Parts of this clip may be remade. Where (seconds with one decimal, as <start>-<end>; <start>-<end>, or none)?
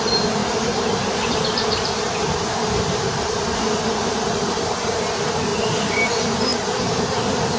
0.4-5.0; 5.5-6.1; 6.5-7.6